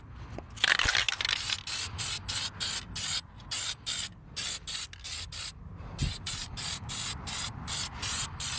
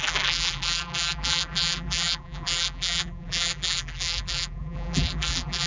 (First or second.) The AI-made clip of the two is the second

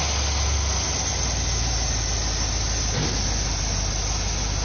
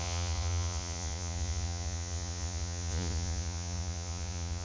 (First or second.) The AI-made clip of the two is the second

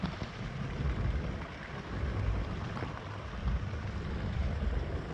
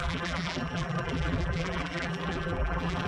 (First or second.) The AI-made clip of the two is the second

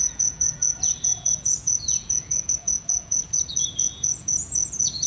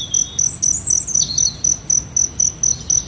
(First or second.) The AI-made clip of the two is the first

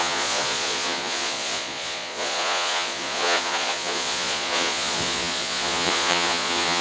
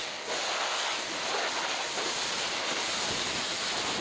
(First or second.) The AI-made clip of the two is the first